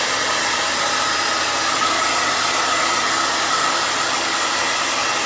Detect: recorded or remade recorded